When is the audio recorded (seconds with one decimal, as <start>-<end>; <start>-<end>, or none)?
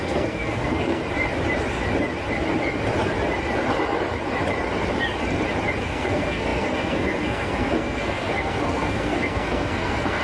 1.0-5.8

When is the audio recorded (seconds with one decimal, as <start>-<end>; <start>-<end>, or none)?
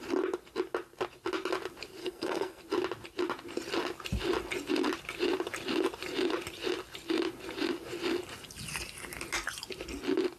0.0-2.0; 2.6-10.4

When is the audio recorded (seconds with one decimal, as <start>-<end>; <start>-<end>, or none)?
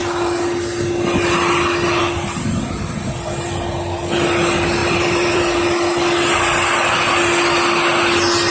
0.0-4.8; 5.4-8.5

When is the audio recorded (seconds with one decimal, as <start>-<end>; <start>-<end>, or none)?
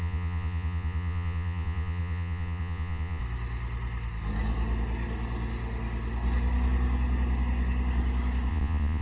3.2-8.5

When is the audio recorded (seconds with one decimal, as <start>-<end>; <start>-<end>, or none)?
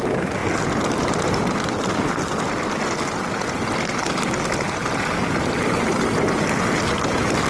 0.0-7.5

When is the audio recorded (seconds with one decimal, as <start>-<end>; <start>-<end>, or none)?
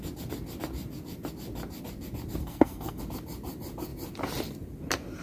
0.0-2.4; 3.0-5.2